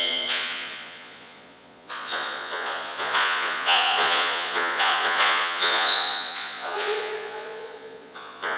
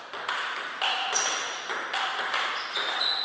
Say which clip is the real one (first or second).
second